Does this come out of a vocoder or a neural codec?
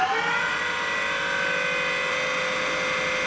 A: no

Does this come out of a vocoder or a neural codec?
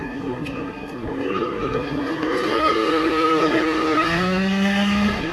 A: yes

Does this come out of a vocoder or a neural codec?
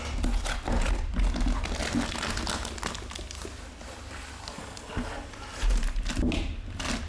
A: no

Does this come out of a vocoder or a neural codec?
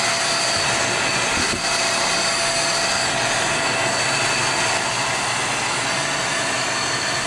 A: no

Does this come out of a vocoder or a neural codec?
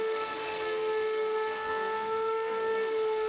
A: yes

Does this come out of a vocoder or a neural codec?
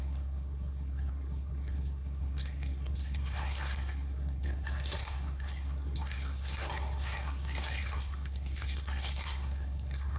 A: yes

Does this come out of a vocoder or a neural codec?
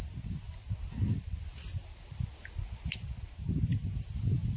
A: no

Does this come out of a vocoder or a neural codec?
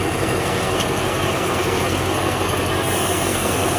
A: yes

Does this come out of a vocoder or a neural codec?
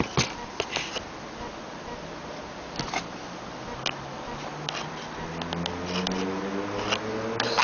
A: no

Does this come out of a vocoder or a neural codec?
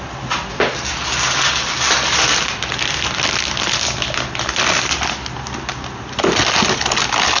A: no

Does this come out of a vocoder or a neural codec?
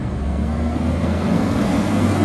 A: yes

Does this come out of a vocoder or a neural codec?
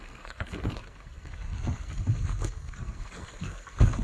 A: yes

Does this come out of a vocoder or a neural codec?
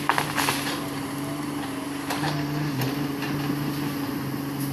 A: no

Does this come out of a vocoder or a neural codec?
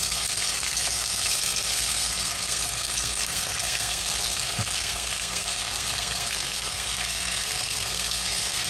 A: yes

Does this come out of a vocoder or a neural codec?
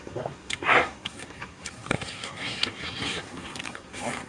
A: yes